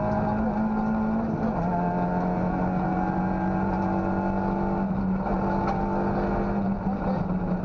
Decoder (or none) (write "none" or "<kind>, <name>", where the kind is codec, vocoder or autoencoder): none